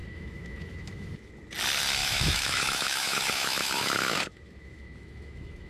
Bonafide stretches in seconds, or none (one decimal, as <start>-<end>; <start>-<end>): 1.3-2.0